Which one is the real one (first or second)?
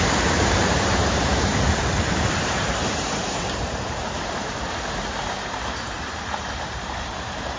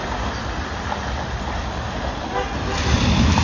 second